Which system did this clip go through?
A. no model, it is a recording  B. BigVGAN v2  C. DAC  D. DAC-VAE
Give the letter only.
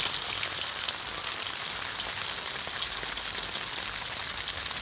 A